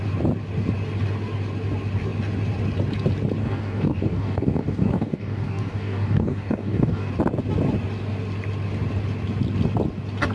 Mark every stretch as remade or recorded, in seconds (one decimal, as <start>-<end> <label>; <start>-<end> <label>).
0.0-3.4 recorded; 3.4-7.1 remade; 7.1-10.3 recorded